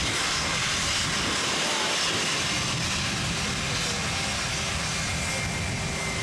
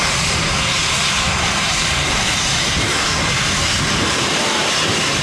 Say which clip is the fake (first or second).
second